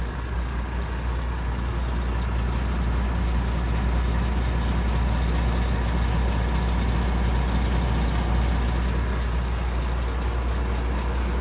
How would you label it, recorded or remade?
recorded